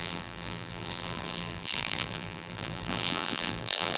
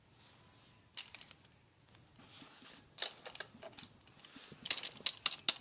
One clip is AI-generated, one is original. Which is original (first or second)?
second